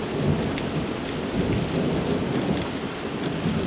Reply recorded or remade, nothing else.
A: remade